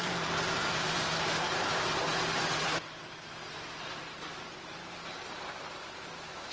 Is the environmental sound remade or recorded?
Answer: remade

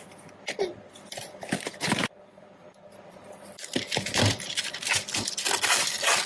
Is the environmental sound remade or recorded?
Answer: remade